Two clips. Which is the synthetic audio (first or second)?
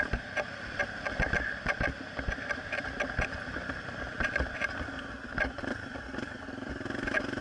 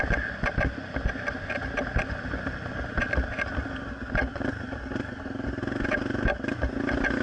first